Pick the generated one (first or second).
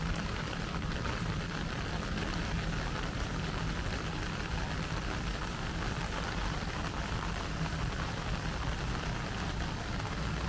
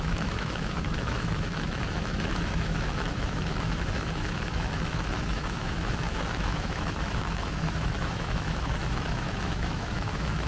second